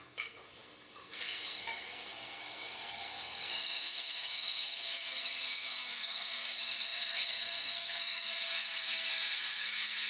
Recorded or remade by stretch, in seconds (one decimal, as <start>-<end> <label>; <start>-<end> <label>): 0.0-10.1 remade